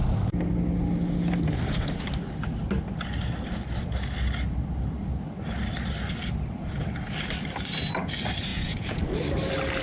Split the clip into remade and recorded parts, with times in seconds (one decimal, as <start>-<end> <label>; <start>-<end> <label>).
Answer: 0.0-8.5 recorded; 8.5-9.0 remade; 9.0-9.8 recorded